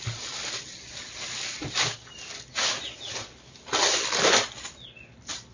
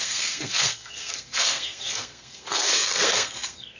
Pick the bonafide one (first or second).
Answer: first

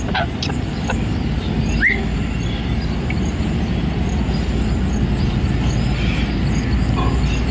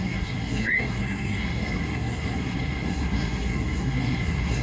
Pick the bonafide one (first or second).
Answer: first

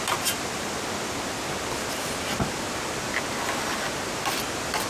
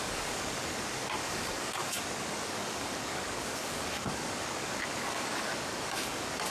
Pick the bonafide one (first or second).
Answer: first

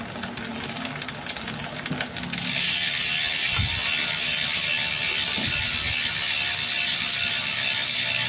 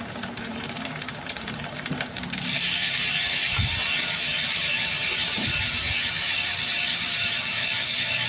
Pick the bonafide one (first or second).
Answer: first